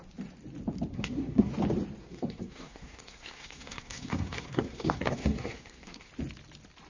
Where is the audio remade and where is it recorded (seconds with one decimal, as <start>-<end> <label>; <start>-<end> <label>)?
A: 0.0-0.9 recorded; 0.9-1.5 remade; 1.5-2.0 recorded; 2.0-6.1 remade; 6.1-6.9 recorded